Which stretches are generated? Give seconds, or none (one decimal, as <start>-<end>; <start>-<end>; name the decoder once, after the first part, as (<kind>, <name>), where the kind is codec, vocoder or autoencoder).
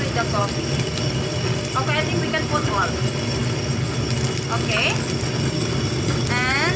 none